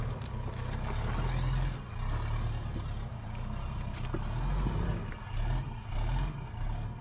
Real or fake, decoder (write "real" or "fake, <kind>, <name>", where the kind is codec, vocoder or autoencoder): real